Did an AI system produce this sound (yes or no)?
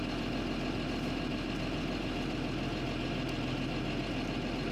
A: no